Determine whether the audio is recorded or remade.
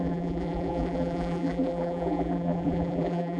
remade